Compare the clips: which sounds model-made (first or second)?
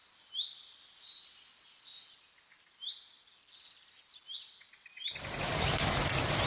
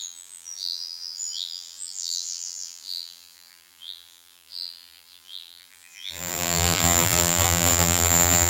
second